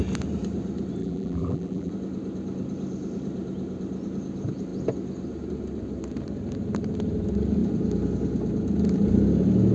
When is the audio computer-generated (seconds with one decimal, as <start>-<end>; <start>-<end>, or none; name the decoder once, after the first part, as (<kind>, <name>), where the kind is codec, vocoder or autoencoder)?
1.0-1.9 (vocoder, BigVGAN v2)